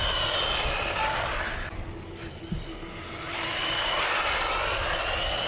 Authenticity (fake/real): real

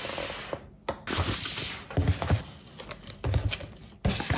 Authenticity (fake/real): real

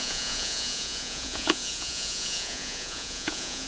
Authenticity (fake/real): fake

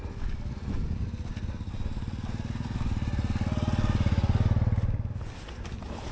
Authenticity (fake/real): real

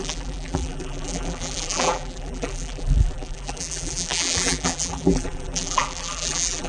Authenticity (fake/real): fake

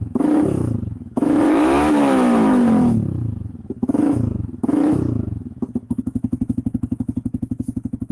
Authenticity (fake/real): fake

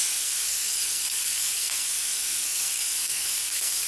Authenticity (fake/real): fake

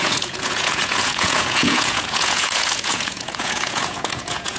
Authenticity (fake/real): fake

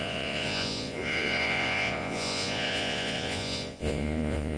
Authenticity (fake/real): fake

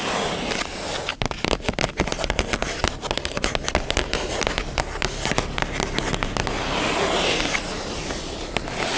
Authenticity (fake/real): real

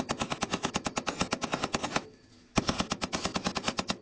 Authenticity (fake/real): fake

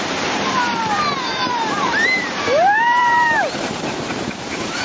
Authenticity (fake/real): fake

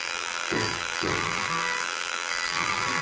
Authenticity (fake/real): fake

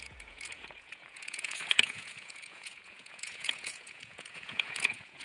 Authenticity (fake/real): fake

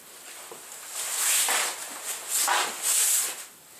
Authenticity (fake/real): real